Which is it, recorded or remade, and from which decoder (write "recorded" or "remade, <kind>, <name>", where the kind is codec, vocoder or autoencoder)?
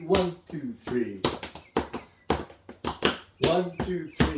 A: recorded